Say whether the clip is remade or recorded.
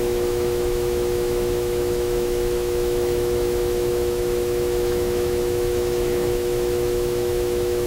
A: remade